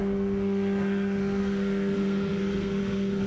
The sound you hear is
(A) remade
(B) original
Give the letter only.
A